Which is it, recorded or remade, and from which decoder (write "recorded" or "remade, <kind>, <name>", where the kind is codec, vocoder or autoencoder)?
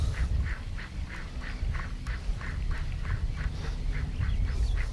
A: recorded